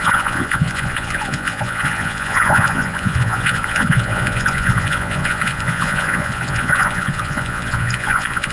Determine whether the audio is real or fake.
fake